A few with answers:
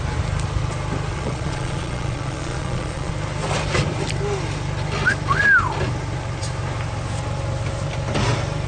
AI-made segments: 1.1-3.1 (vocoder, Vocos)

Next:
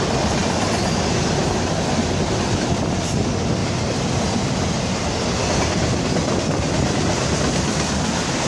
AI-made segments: 3.6-5.0 (vocoder, BigVGAN v2)

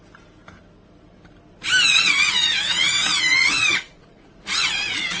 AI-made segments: 1.9-5.2 (vocoder, Vocos)

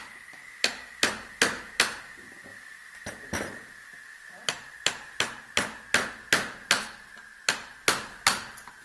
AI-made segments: 2.5-5.2 (vocoder, BigVGAN v2)

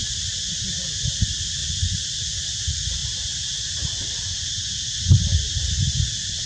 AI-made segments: 0.0-1.1 (vocoder, BigVGAN v2); 1.6-2.4; 3.0-5.0